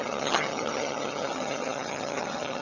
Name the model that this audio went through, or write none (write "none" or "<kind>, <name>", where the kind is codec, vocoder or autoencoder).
vocoder, HiFi-GAN